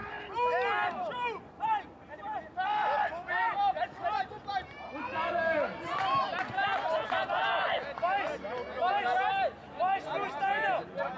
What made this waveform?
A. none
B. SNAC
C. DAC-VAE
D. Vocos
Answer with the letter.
A